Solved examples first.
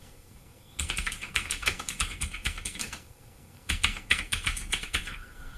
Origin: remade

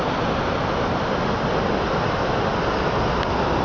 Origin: recorded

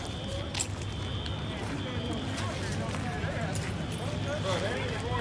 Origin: recorded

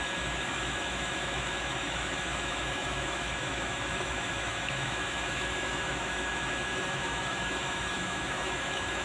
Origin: remade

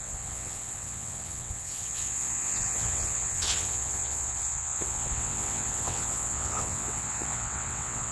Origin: remade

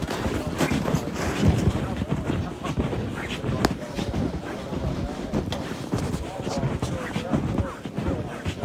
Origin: recorded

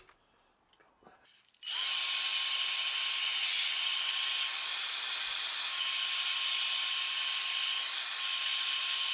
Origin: recorded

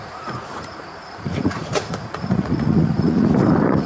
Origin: remade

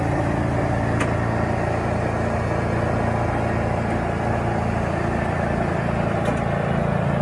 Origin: recorded